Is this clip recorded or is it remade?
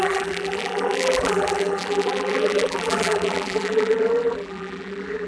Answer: remade